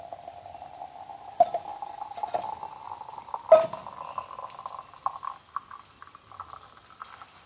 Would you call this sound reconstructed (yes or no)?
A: no